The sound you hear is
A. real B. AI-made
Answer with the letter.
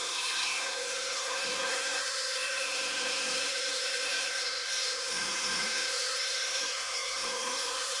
B